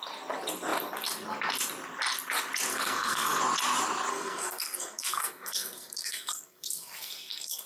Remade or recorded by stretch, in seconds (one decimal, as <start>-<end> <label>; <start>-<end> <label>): 0.0-2.7 recorded; 2.7-3.4 remade; 3.4-4.1 recorded; 4.1-7.7 remade